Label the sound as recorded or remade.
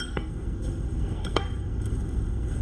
remade